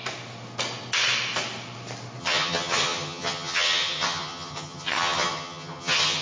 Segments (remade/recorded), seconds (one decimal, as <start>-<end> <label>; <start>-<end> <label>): 0.0-2.2 recorded; 2.2-6.2 remade